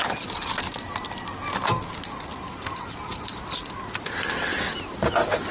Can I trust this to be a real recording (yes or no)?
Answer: yes